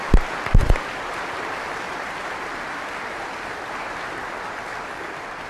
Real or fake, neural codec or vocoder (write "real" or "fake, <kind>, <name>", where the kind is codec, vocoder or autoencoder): fake, vocoder, BigVGAN v2